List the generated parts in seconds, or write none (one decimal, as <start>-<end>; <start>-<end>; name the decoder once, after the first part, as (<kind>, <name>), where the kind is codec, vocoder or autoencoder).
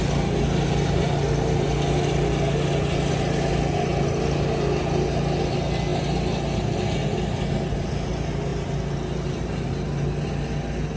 none